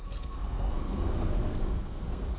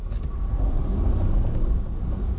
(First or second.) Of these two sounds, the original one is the second